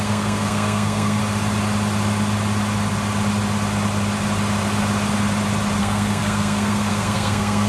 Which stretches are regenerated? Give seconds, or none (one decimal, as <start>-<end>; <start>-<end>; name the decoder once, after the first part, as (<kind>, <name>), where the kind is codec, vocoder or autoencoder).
0.0-1.2 (codec, SNAC); 5.8-7.7